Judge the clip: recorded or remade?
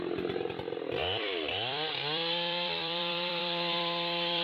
remade